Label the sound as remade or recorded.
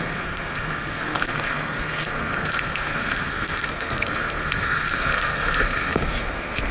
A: remade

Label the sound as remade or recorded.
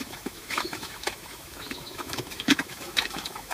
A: remade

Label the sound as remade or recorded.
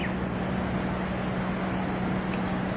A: recorded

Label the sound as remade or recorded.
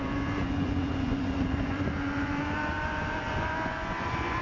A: remade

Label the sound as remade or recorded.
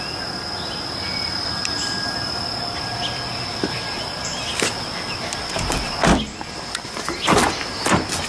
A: recorded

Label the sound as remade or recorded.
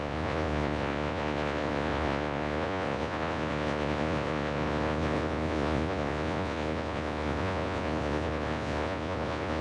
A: remade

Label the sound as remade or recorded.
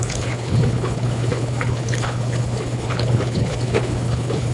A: remade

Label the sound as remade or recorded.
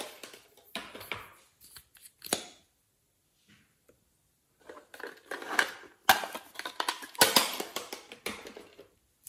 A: recorded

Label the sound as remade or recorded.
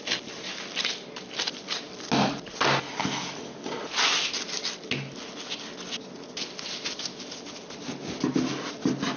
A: recorded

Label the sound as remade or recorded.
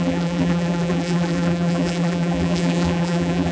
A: remade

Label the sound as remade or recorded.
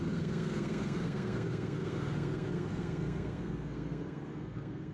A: remade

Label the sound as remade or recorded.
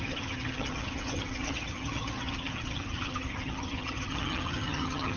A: remade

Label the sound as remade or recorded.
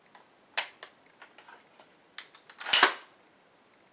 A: recorded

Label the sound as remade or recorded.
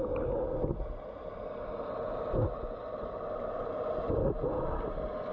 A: recorded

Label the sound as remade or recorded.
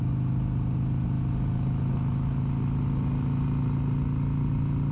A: recorded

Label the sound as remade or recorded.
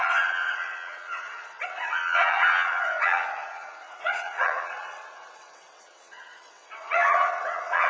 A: remade